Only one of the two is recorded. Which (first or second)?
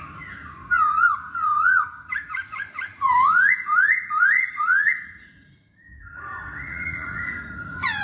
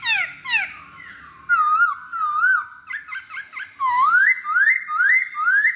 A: second